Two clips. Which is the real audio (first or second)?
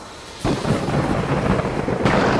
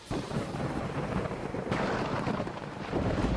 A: first